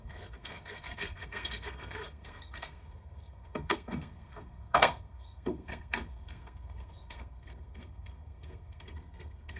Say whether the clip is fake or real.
fake